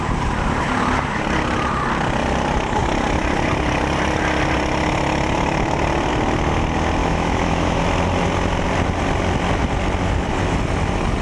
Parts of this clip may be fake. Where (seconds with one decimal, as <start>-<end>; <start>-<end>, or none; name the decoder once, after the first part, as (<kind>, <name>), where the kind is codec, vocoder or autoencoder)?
7.0-7.8 (autoencoder, DAC-VAE)